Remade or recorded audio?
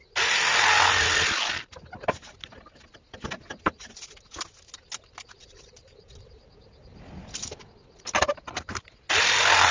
recorded